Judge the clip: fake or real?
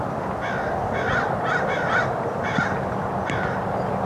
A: real